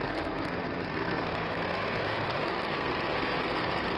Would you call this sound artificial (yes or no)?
yes